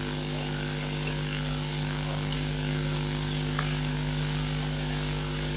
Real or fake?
fake